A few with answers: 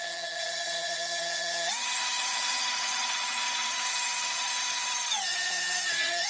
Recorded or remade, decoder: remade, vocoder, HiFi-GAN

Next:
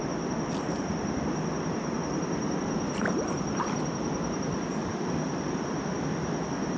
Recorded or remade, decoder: recorded